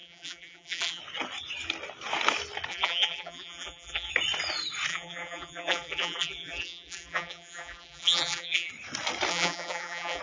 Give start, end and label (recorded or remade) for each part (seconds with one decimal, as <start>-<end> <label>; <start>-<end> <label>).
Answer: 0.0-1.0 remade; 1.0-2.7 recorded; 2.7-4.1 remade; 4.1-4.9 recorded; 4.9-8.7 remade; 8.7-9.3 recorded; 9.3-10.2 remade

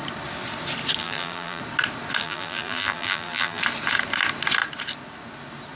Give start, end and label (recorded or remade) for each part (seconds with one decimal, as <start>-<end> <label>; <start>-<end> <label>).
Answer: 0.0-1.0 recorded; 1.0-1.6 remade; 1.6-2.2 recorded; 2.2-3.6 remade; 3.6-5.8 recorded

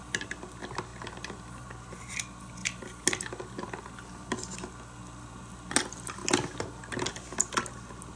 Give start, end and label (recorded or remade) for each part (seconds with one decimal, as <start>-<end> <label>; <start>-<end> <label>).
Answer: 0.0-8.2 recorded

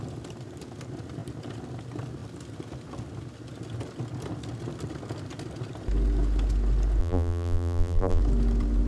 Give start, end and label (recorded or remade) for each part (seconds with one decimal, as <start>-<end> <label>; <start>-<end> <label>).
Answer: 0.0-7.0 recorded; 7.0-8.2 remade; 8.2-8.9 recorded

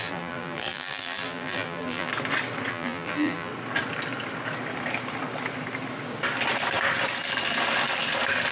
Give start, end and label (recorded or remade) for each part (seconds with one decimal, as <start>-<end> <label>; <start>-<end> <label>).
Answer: 0.0-2.1 remade; 2.1-2.7 recorded; 2.7-3.5 remade; 3.5-8.5 recorded

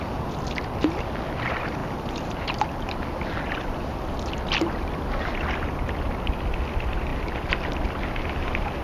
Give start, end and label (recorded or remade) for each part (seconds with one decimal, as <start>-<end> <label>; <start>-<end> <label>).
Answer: 0.0-8.8 recorded

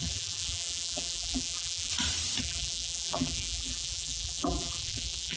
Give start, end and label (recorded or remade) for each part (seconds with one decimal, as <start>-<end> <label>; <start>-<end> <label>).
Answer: 0.0-1.9 remade; 1.9-2.4 recorded; 2.4-5.4 remade